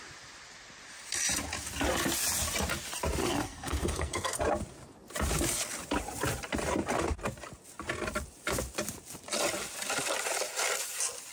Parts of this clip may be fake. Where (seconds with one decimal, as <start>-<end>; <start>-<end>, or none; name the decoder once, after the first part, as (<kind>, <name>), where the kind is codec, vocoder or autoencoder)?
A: 3.2-4.4 (codec, SNAC)